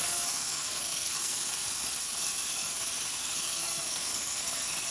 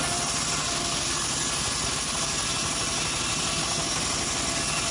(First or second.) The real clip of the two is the second